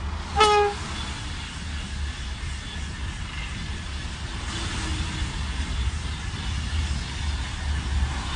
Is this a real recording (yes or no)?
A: yes